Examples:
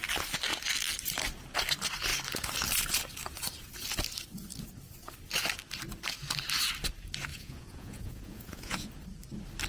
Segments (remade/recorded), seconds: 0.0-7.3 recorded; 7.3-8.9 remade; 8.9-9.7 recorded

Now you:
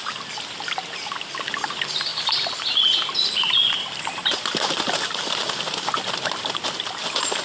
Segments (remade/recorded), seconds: 0.0-2.1 recorded; 2.1-6.5 remade; 6.5-7.4 recorded

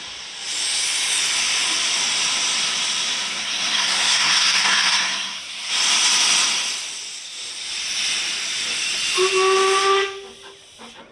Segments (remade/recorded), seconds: 0.0-3.3 recorded; 3.3-5.7 remade; 5.7-11.1 recorded

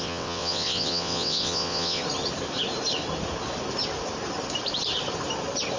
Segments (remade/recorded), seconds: 0.0-2.0 remade; 2.0-5.8 recorded

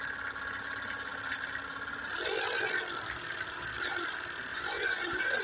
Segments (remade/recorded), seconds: 0.0-4.5 recorded; 4.5-5.4 remade

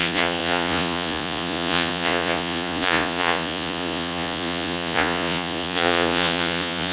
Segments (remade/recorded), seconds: 0.0-6.9 remade

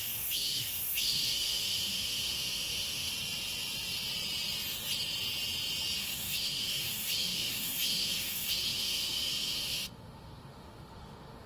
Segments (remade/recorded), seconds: 0.0-3.1 remade; 3.1-6.0 recorded; 6.0-11.5 remade